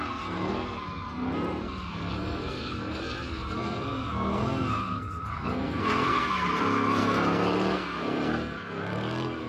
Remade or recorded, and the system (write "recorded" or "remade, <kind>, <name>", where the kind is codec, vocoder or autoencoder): remade, codec, SNAC